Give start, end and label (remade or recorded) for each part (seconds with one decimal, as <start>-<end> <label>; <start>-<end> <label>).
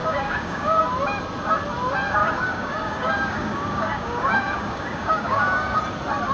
0.0-0.8 remade; 0.8-2.2 recorded; 2.2-5.8 remade; 5.8-6.3 recorded